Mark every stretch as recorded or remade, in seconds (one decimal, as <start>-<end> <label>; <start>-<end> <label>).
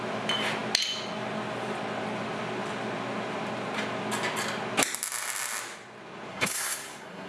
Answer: 0.0-6.3 recorded; 6.3-7.3 remade